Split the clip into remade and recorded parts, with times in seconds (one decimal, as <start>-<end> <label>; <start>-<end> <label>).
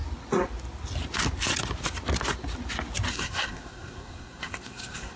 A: 0.0-3.1 recorded; 3.1-5.2 remade